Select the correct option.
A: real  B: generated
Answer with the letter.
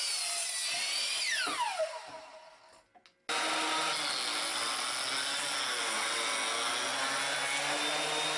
A